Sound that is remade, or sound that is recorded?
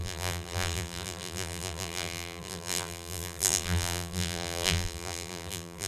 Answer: remade